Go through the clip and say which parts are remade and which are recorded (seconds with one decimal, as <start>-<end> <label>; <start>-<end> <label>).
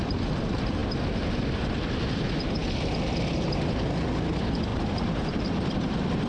0.0-4.7 recorded; 4.7-5.4 remade; 5.4-6.3 recorded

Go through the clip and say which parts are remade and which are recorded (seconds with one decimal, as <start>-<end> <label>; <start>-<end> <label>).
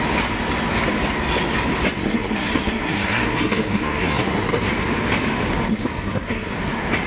0.0-2.0 recorded; 2.0-4.7 remade; 4.7-5.7 recorded; 5.7-6.5 remade; 6.5-7.1 recorded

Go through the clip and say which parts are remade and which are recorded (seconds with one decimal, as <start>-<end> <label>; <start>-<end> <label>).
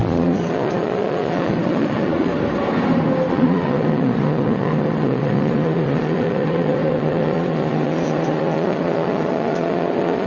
0.0-2.3 remade; 2.3-3.3 recorded; 3.3-10.3 remade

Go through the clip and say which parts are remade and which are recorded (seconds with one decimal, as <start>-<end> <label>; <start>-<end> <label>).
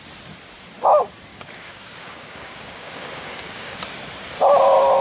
0.0-1.3 recorded; 1.3-3.8 remade; 3.8-5.0 recorded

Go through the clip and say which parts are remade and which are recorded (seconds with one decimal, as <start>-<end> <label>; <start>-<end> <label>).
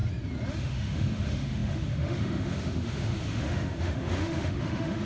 0.0-0.6 recorded; 0.6-5.0 remade